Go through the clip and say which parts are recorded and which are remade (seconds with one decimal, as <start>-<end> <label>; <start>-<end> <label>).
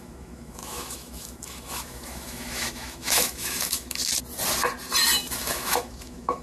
0.0-4.1 remade; 4.1-5.4 recorded; 5.4-6.4 remade